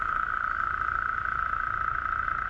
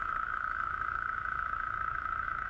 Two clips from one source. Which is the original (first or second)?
first